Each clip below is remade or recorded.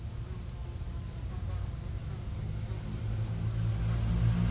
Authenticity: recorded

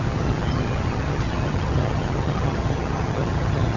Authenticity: remade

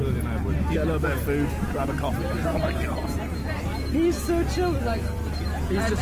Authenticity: recorded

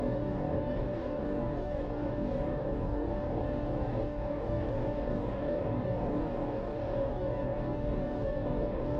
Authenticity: remade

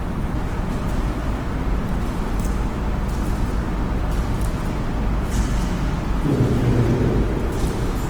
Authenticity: recorded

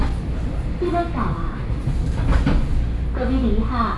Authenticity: recorded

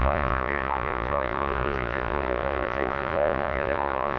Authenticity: remade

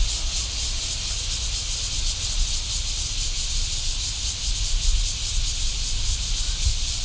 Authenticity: recorded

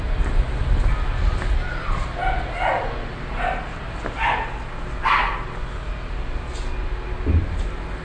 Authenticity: recorded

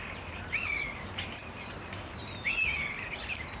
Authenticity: recorded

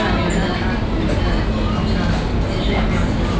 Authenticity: recorded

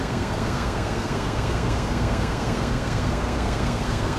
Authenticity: remade